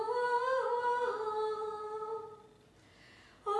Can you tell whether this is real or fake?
real